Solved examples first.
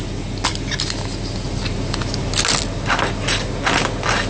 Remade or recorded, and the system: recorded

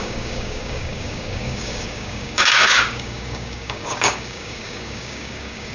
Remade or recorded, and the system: remade, codec, DAC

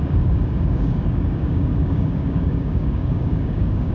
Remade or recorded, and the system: remade, codec, DAC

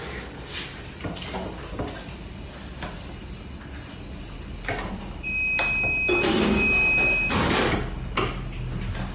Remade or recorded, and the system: recorded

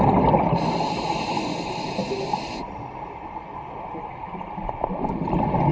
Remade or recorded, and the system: recorded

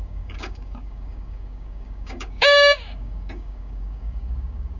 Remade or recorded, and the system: remade, codec, DAC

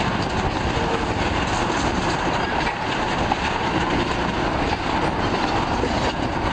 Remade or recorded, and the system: recorded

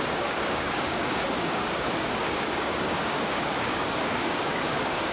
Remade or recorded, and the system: remade, codec, DAC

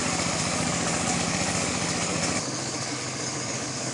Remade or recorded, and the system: remade, codec, DAC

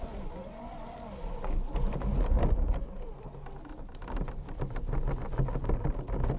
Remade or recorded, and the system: recorded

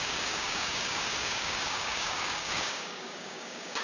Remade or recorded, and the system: remade, codec, DAC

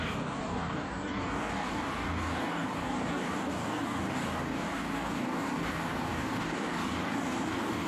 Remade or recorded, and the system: remade, codec, DAC